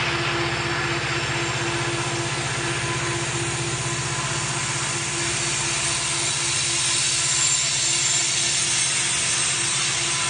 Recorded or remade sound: recorded